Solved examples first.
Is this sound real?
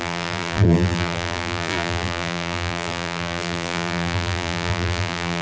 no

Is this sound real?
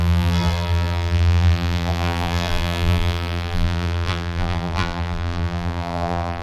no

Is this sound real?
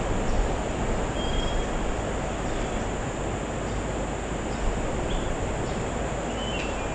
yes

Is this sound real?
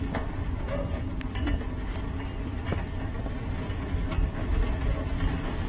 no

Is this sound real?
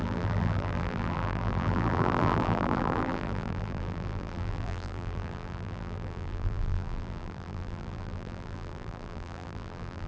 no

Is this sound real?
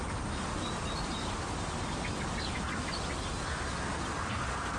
yes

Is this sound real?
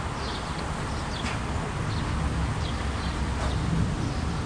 yes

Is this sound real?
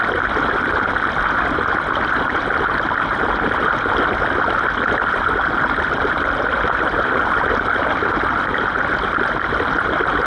yes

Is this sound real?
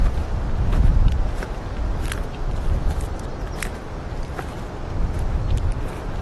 no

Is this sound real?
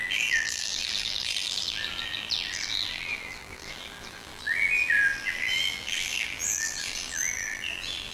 no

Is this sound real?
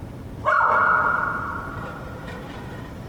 no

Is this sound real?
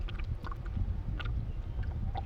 yes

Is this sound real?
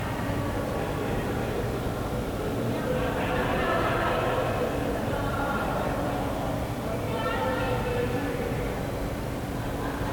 no